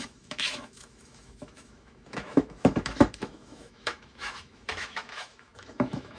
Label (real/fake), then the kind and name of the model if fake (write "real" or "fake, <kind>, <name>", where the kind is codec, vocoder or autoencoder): fake, autoencoder, DAC-VAE